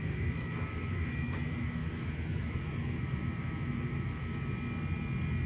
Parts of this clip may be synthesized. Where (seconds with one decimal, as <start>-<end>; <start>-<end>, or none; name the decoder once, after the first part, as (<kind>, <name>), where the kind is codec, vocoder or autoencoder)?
0.0-4.3 (autoencoder, DAC-VAE)